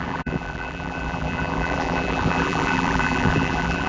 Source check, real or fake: fake